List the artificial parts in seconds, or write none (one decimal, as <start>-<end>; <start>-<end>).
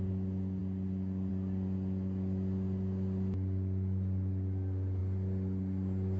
none